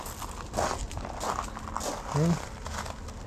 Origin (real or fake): real